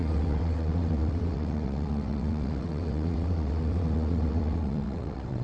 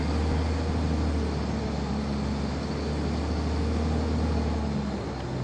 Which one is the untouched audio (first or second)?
second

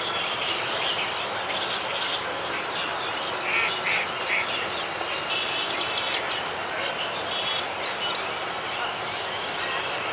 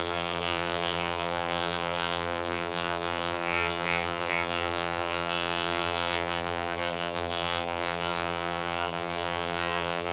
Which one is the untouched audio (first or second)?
first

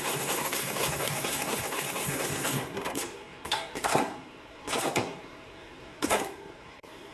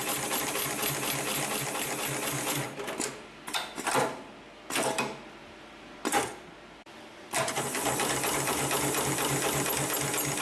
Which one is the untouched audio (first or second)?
second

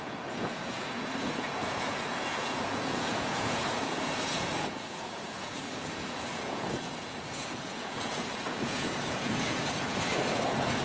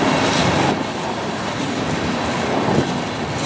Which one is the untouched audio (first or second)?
second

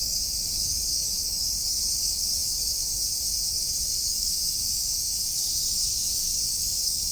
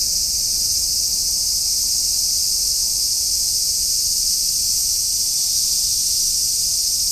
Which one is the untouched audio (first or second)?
second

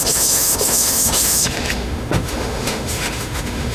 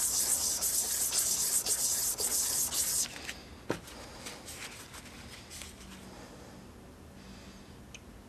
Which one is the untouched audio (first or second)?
second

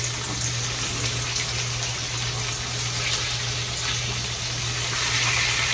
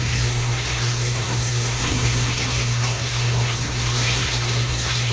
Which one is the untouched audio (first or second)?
first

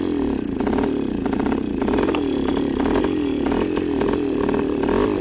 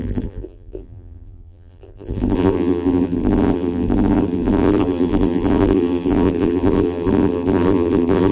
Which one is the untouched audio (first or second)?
first